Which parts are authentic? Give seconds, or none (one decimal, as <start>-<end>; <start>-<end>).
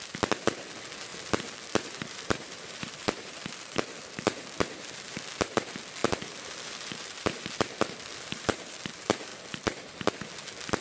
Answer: 0.0-1.1; 5.2-6.0; 8.7-9.3; 10.1-10.8